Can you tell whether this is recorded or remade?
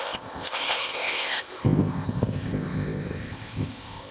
remade